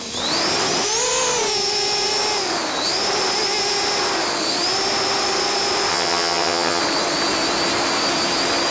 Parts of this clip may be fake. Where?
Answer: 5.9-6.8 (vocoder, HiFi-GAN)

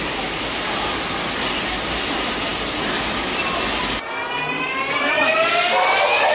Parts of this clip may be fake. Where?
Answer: none